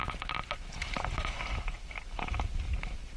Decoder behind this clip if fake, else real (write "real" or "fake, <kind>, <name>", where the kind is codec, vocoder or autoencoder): real